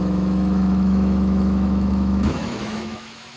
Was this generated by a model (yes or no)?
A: yes